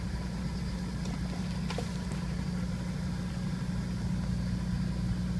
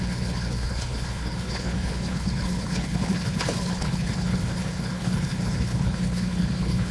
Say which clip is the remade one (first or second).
second